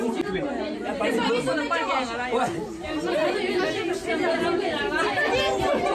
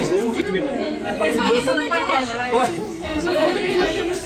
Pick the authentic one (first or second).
first